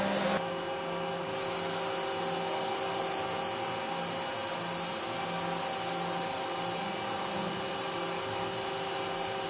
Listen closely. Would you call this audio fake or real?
real